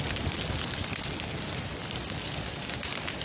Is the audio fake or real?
real